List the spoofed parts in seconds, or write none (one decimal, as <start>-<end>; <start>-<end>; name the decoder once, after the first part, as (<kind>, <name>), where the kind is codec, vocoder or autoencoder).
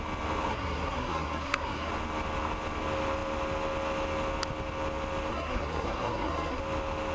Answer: 0.5-1.9 (codec, SNAC); 5.3-6.6